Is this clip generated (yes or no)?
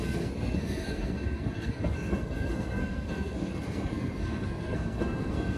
yes